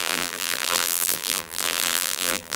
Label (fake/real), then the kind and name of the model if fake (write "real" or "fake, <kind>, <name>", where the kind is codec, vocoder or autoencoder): fake, vocoder, BigVGAN v2